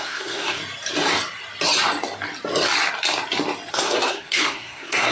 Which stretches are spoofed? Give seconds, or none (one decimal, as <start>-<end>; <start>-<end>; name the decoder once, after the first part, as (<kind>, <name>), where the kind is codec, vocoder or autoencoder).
0.0-0.6 (codec, SNAC); 3.7-5.1

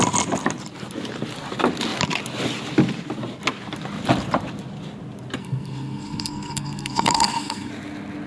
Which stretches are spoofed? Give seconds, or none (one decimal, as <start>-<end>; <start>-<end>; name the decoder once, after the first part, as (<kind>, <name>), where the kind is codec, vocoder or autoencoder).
5.4-7.7 (codec, SNAC)

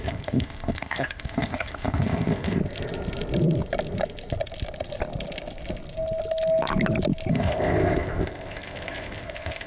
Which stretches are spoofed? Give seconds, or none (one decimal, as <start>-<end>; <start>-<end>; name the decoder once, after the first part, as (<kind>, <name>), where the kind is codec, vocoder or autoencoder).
0.0-2.6 (codec, ZipCodec); 7.3-9.7